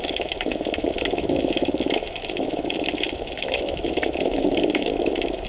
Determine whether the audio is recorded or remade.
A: remade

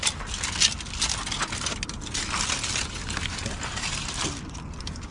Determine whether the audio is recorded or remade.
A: recorded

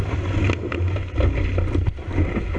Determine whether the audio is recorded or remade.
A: recorded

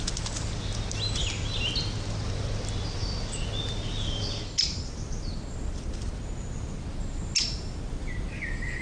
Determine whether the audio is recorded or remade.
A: recorded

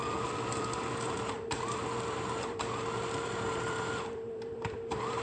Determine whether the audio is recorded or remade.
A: remade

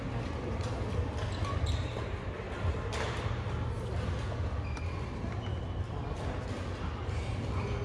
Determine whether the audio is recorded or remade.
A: recorded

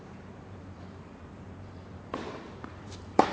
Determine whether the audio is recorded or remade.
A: remade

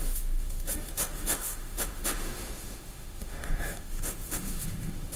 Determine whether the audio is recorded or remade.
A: remade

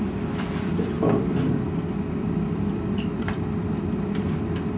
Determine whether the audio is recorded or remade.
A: remade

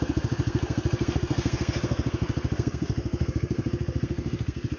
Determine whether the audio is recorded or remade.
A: remade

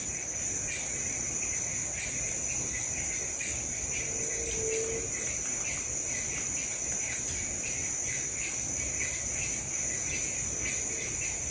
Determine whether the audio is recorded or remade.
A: recorded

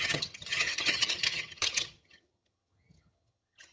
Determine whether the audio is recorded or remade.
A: remade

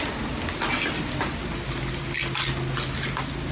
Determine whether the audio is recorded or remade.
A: recorded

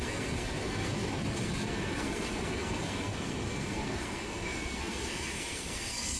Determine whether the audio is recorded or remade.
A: remade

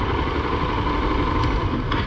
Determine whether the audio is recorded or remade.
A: recorded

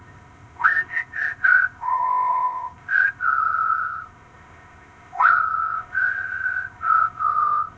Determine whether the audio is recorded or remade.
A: remade